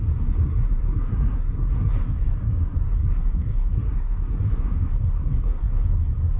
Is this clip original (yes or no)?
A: no